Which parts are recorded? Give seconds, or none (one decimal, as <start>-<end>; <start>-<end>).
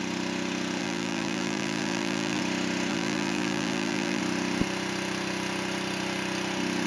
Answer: 0.0-0.8; 2.4-2.9; 4.2-6.9